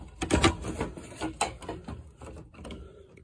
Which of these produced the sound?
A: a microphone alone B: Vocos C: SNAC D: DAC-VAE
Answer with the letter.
A